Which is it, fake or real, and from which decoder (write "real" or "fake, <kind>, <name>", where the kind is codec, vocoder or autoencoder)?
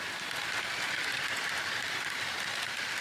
fake, vocoder, BigVGAN v2